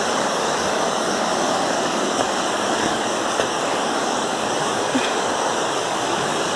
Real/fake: fake